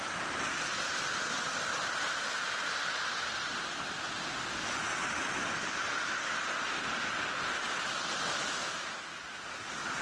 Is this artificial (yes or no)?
no